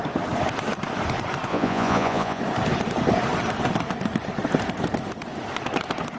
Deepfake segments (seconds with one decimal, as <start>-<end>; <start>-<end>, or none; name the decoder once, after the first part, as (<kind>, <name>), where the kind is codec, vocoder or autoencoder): 1.5-2.4 (vocoder, Vocos)